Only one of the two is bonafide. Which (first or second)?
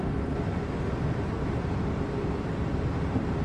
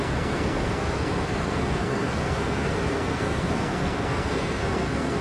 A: first